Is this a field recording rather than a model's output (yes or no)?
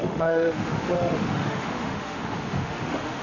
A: no